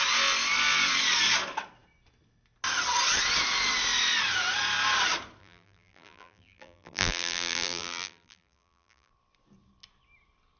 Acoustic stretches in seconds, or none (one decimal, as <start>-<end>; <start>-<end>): 0.0-5.4; 9.1-10.6